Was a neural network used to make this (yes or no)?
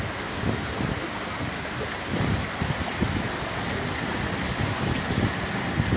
no